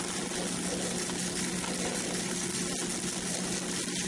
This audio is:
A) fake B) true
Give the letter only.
B